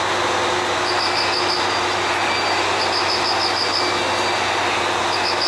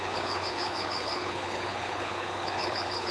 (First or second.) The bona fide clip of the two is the first